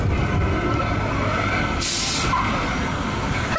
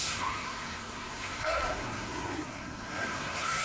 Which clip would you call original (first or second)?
first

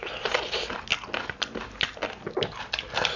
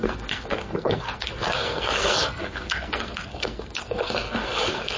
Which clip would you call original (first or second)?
first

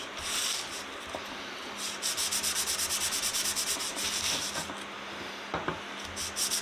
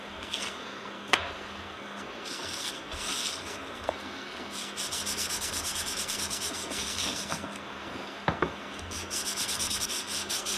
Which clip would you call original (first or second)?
first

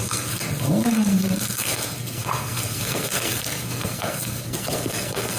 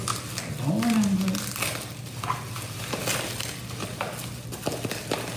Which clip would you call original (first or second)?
second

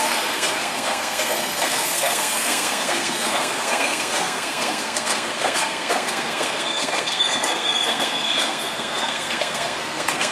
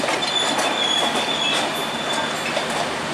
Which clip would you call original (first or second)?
second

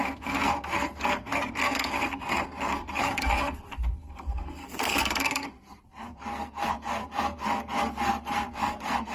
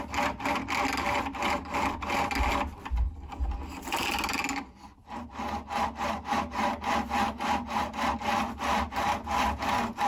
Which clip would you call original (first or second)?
second